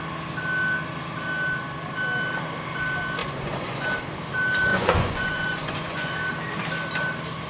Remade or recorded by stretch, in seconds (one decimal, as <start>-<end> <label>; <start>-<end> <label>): 0.0-3.2 recorded; 3.2-4.0 remade; 4.0-4.7 recorded; 4.7-6.1 remade; 6.1-7.5 recorded